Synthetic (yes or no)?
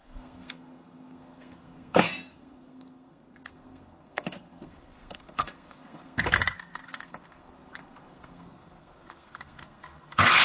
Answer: yes